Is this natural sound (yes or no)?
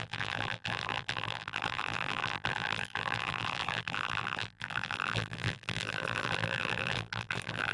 no